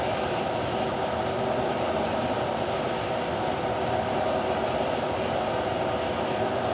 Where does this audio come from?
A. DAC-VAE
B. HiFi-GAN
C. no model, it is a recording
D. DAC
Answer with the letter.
C